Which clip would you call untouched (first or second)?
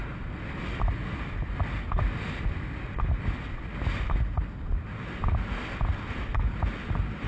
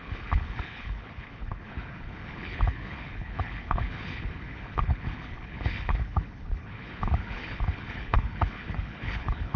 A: first